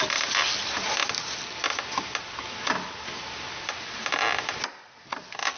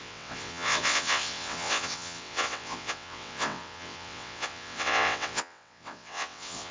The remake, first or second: second